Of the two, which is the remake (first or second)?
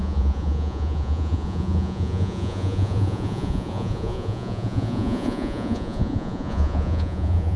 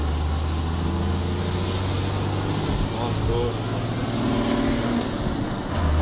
first